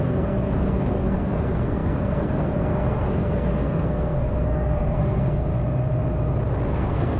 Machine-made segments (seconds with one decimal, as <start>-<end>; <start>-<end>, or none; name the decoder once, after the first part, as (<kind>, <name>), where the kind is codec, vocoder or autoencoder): 0.0-5.5 (codec, SNAC); 6.7-7.2